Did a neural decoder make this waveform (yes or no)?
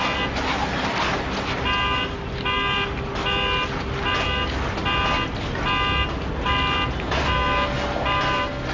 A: no